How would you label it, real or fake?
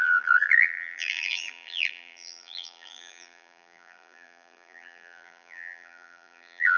fake